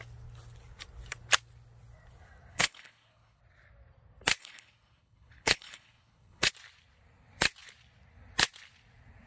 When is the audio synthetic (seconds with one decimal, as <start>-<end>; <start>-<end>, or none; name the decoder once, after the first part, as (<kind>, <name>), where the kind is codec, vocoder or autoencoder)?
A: 2.5-3.4 (codec, HILCodec); 4.4-6.5